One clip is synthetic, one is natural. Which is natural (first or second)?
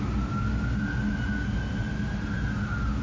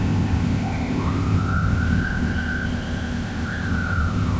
first